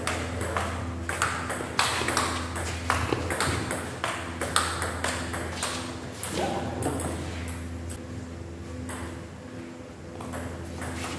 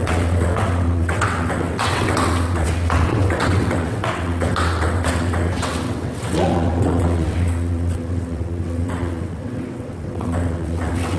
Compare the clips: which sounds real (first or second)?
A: first